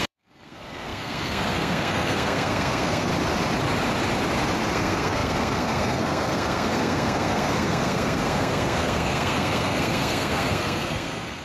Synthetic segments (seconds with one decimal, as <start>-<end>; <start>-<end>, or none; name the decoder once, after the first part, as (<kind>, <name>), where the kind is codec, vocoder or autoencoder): 0.0-3.1 (codec, SNAC); 4.7-11.4